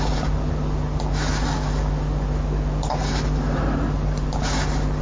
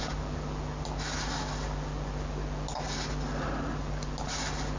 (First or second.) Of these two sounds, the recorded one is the second